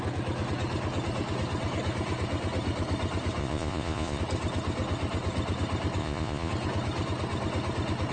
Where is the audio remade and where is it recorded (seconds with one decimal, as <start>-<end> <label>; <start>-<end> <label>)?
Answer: 0.0-3.4 recorded; 3.4-4.2 remade; 4.2-6.0 recorded; 6.0-6.5 remade; 6.5-8.1 recorded